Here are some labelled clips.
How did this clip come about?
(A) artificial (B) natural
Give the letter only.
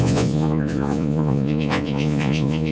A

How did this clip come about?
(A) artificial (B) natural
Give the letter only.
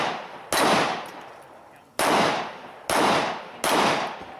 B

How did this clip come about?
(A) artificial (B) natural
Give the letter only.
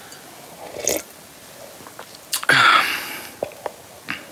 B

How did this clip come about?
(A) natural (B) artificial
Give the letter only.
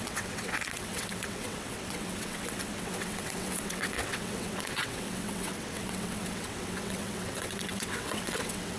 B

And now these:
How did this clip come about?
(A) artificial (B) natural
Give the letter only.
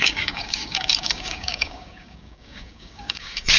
A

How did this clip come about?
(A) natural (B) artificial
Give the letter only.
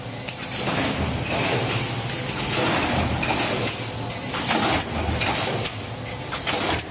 A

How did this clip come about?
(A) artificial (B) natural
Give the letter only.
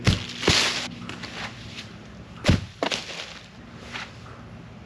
B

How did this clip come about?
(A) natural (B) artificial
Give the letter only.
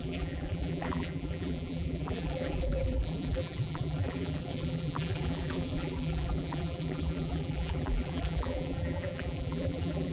B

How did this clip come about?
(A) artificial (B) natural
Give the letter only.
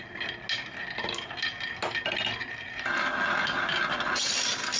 B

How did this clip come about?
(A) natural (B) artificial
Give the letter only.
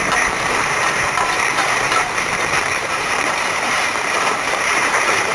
B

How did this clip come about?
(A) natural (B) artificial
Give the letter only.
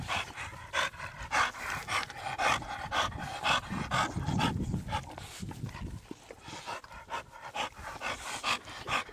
A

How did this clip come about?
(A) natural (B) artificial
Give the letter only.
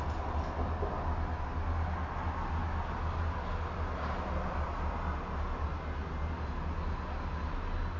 A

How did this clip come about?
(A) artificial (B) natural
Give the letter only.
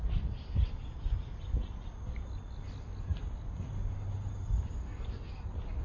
B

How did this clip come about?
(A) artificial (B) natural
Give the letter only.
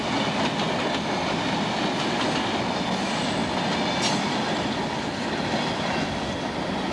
B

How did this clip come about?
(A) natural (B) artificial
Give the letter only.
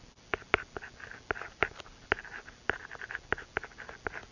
A